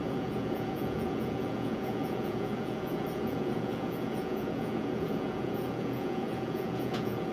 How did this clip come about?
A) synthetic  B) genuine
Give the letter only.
A